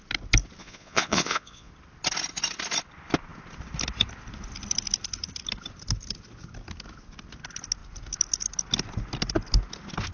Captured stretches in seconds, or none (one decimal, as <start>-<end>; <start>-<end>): 0.0-0.6; 1.7-10.1